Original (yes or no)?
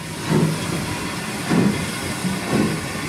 yes